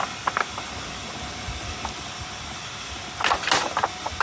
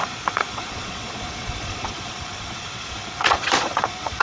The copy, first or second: second